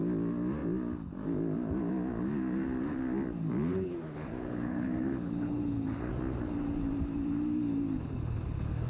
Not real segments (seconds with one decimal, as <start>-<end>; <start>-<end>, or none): 3.7-6.1